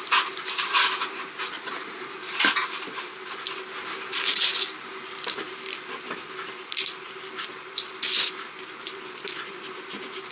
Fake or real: real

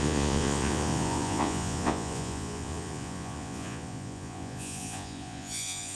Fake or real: fake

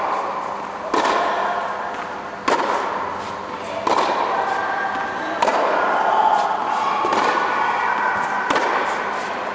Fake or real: real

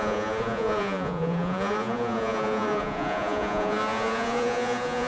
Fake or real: fake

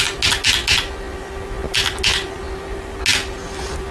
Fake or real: real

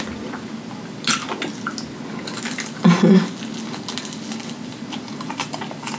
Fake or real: real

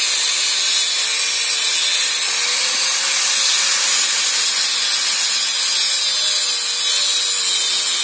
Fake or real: real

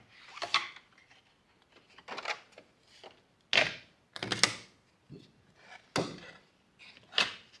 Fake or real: real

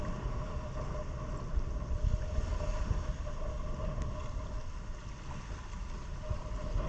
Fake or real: real